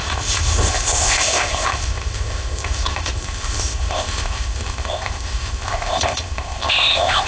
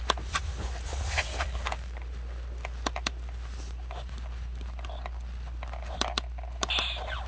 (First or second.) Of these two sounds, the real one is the second